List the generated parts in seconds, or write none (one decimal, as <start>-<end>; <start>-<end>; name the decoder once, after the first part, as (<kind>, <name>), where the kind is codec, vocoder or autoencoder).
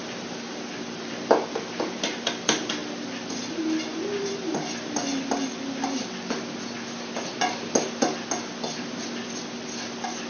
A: 0.0-2.3 (vocoder, BigVGAN v2); 2.8-3.5